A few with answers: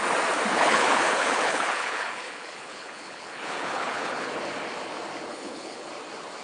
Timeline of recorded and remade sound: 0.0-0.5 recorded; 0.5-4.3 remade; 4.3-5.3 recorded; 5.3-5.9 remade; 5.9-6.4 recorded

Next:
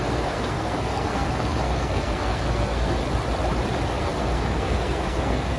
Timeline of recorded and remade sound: 0.0-3.0 remade; 3.0-4.0 recorded; 4.0-5.6 remade

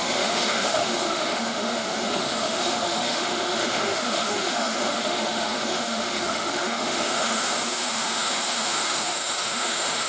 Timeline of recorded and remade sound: 0.0-10.1 remade

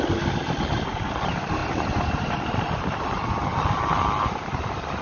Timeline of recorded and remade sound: 0.0-0.4 recorded; 0.4-1.0 remade; 1.0-1.6 recorded; 1.6-3.0 remade; 3.0-5.0 recorded